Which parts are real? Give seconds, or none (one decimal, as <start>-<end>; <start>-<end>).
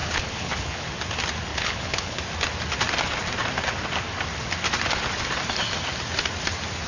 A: 0.9-1.5; 2.2-6.9